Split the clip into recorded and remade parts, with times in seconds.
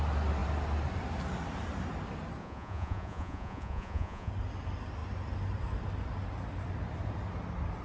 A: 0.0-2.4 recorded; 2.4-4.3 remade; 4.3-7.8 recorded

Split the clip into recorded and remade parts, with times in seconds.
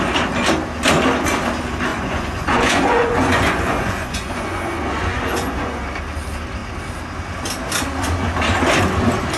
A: 0.0-1.9 recorded; 1.9-5.8 remade; 5.8-9.4 recorded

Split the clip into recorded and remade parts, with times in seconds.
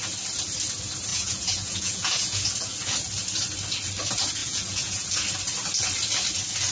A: 0.0-1.1 recorded; 1.1-2.4 remade; 2.4-4.4 recorded; 4.4-5.1 remade; 5.1-6.7 recorded